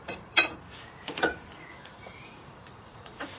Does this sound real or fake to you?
fake